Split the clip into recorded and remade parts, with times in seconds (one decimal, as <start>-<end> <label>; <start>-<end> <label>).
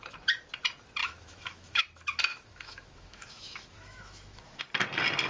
0.0-1.0 recorded; 1.0-1.8 remade; 1.8-2.3 recorded; 2.3-4.6 remade; 4.6-5.3 recorded